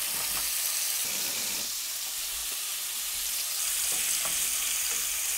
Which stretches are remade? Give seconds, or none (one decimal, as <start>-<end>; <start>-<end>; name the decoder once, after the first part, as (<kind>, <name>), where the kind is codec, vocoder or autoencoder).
none